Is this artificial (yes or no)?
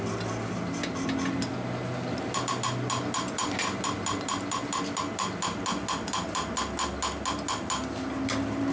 no